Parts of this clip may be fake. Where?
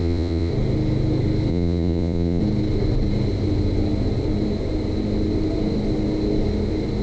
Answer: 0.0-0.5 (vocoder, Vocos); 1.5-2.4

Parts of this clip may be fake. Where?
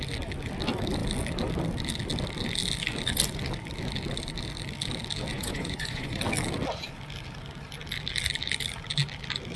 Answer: 5.3-6.2 (vocoder, Vocos)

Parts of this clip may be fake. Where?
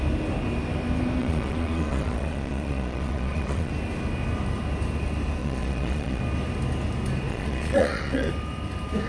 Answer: 1.2-3.7 (vocoder, Vocos); 5.4-6.2; 7.3-8.3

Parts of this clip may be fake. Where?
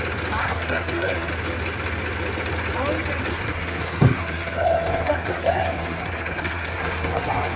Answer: 0.4-1.3 (codec, SNAC); 3.3-7.6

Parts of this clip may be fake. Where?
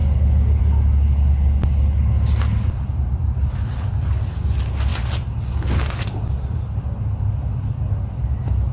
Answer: none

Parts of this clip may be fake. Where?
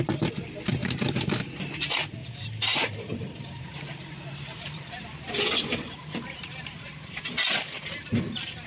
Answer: 0.8-1.5 (vocoder, BigVGAN v2); 2.2-7.2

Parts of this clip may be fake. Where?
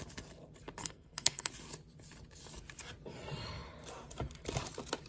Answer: 0.8-1.5 (codec, SNAC)